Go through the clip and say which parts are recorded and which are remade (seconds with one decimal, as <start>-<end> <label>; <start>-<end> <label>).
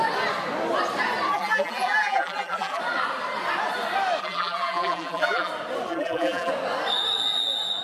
0.0-1.3 recorded; 1.3-2.8 remade; 2.8-4.2 recorded; 4.2-5.5 remade; 5.5-5.9 recorded; 5.9-6.5 remade; 6.5-7.8 recorded